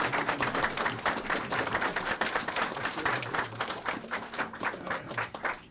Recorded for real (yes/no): no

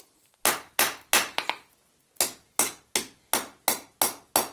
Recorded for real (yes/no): yes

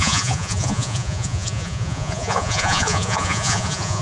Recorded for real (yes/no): no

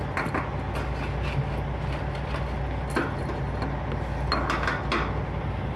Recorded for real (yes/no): yes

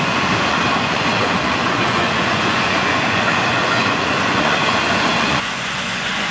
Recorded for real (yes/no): no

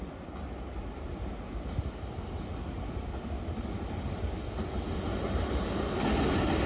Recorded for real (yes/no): yes